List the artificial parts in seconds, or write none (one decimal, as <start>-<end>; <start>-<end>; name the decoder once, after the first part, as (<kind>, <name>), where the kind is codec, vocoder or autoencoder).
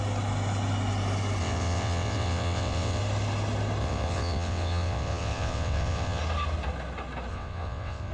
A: 1.4-3.0 (vocoder, WaveNeXt); 3.8-6.2; 7.3-8.1